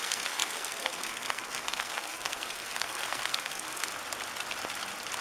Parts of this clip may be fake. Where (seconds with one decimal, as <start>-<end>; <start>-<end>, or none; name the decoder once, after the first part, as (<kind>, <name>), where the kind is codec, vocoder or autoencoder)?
0.0-3.9 (codec, SNAC)